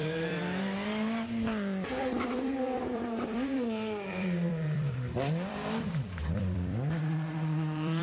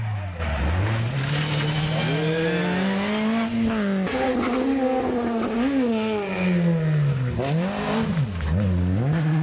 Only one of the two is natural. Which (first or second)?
second